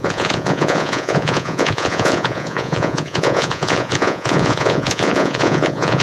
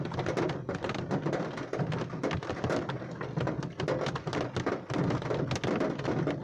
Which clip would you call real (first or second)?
second